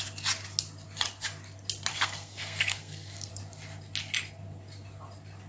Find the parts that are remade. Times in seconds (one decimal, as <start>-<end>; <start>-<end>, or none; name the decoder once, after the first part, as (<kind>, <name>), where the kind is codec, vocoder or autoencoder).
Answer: 1.9-3.3 (codec, SNAC)